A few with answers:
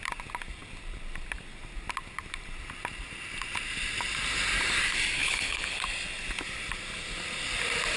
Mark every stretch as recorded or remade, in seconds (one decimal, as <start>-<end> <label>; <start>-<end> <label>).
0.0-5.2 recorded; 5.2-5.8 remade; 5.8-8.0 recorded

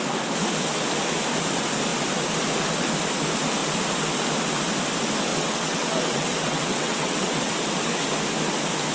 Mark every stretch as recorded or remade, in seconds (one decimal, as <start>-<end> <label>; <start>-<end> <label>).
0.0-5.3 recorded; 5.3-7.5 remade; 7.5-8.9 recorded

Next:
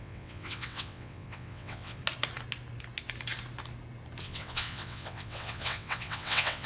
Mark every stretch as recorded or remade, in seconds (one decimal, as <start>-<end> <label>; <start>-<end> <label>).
0.0-2.0 remade; 2.0-4.2 recorded; 4.2-6.7 remade